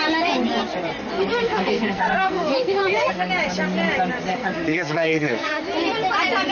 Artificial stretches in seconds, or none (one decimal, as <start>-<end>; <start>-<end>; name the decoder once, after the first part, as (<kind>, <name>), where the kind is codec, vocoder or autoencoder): 1.4-3.3 (codec, SNAC); 4.3-5.6